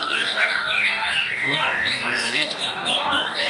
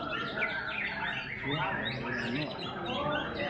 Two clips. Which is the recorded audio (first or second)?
second